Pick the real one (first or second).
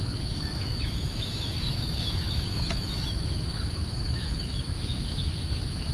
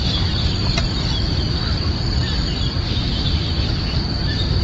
second